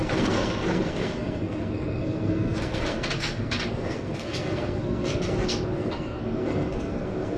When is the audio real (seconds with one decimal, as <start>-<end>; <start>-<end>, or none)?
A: none

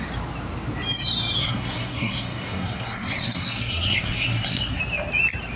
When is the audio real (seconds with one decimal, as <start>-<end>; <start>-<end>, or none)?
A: 0.0-1.4; 4.8-5.6

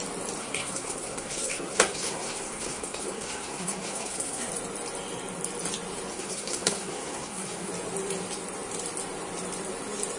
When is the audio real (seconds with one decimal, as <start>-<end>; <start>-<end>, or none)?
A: 0.0-0.4; 4.5-6.1; 7.7-10.2

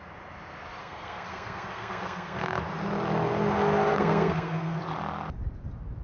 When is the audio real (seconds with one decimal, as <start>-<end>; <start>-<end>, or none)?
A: 0.0-0.8; 2.6-3.9; 4.8-6.0

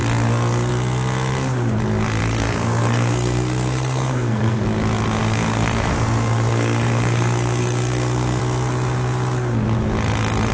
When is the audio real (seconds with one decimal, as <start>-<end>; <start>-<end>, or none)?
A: 0.0-2.2; 4.6-5.2; 8.4-10.5

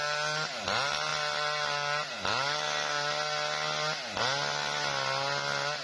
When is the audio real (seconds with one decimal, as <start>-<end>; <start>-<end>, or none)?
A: 0.0-5.8

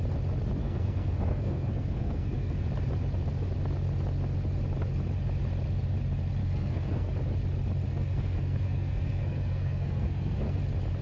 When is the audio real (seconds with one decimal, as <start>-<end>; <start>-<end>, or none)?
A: 0.0-0.6; 2.7-6.4; 7.1-7.9; 10.6-11.0

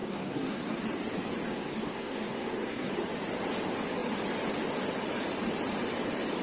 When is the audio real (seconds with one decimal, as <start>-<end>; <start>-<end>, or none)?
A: 0.8-1.5; 2.9-6.4